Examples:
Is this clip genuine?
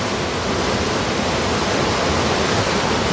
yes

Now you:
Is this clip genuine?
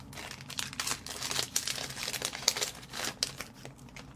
yes